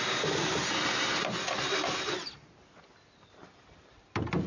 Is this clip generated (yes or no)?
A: no